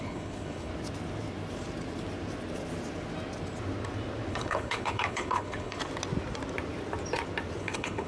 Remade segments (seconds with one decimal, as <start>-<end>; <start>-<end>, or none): 0.0-0.7; 4.3-5.8; 7.6-8.1